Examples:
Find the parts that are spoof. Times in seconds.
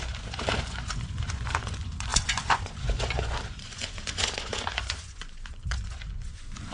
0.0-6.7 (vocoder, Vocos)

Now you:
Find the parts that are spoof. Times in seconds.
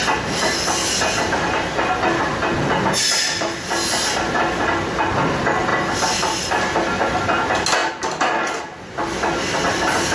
none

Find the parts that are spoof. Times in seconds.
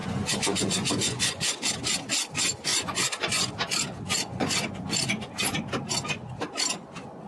0.0-1.7 (vocoder, Vocos); 2.7-3.5; 3.9-5.3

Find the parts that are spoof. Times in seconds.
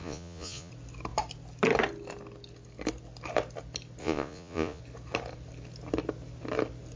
0.0-0.7 (vocoder, Vocos); 4.0-4.8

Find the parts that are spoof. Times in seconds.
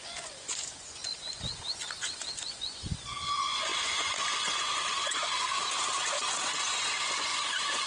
0.0-7.9 (vocoder, Vocos)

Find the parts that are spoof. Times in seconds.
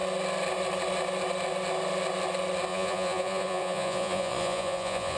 2.7-5.2 (vocoder, Vocos)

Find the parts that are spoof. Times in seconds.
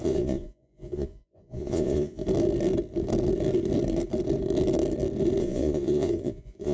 0.0-2.2 (vocoder, Vocos); 5.4-6.7